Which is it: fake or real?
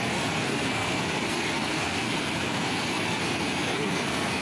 fake